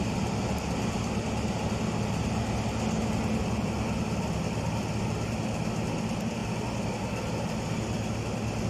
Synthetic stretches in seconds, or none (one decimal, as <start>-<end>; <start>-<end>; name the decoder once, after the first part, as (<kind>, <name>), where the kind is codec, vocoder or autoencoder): none